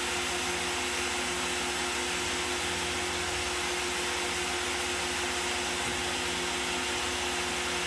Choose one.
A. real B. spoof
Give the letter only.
A